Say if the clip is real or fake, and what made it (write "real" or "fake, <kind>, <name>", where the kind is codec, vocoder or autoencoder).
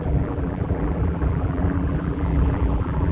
fake, vocoder, BigVGAN v2